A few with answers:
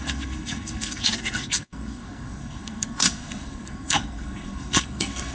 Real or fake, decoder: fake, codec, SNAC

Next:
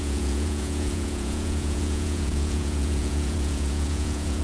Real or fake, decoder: fake, vocoder, Vocos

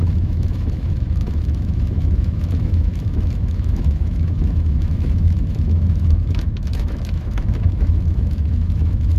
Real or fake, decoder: fake, autoencoder, DAC-VAE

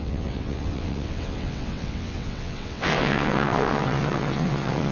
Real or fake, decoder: fake, vocoder, WaveNeXt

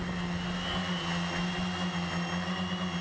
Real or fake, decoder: real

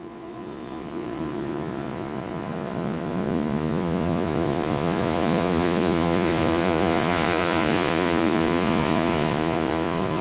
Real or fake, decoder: fake, vocoder, Vocos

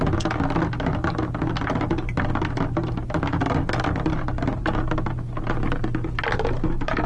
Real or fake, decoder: real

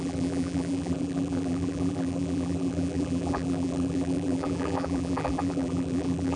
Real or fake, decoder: fake, vocoder, BigVGAN v2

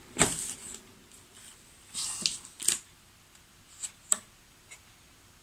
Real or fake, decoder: real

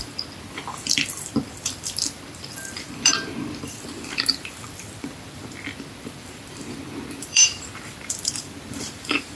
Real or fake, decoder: fake, vocoder, BigVGAN v2